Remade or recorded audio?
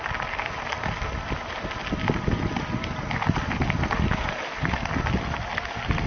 recorded